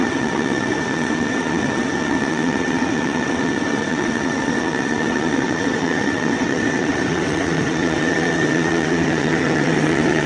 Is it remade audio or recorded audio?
remade